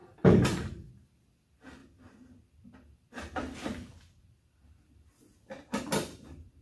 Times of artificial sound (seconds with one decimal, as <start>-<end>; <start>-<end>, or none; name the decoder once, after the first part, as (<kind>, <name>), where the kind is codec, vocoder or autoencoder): 0.0-0.9 (codec, DAC)